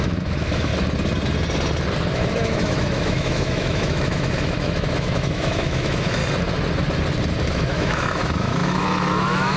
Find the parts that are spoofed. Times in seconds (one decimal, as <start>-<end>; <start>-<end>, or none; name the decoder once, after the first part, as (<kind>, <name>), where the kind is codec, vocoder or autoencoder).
0.0-0.7 (autoencoder, DAC-VAE); 2.1-6.2; 7.5-9.6